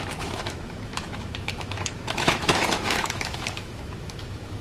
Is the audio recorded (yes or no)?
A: no